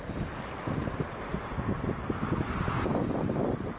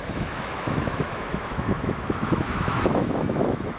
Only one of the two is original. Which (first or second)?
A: first